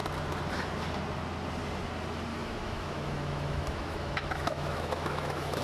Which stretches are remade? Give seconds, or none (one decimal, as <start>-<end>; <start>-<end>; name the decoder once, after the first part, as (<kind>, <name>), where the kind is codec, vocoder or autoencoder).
2.3-5.6 (autoencoder, DAC-VAE)